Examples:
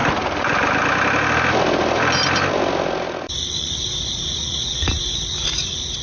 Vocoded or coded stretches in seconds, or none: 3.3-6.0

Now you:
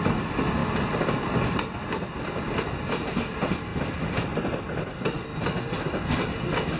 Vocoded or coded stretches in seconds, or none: none

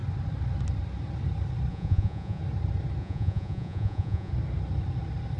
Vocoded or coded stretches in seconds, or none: 1.7-2.4; 3.0-4.3

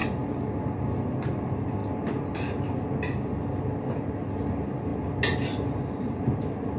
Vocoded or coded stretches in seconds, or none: none

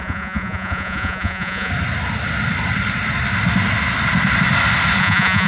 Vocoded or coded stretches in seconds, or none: 0.0-1.7; 5.0-5.5

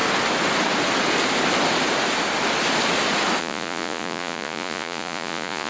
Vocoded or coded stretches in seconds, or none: 3.4-5.7

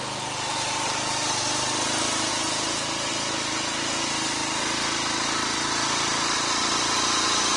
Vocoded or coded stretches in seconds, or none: 2.3-3.1

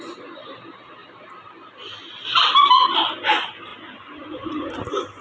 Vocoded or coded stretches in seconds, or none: 3.7-4.7